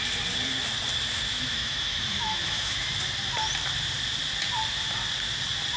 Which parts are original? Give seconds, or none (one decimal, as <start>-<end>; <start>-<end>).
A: 0.0-1.3; 2.9-5.8